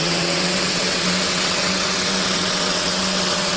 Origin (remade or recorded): remade